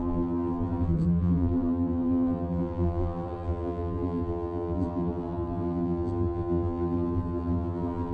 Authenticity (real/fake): fake